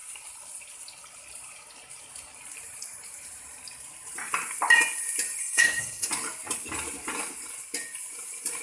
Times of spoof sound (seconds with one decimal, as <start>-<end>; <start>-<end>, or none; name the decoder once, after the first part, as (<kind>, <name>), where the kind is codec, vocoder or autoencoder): 5.4-6.1 (codec, SNAC)